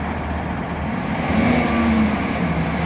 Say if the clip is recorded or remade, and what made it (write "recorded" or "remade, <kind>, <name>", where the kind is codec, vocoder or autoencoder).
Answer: recorded